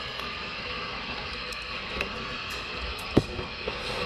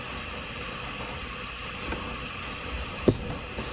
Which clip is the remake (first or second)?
first